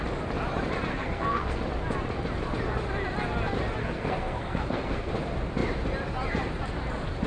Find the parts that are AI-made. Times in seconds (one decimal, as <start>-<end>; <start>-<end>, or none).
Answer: 0.9-1.6; 3.8-5.1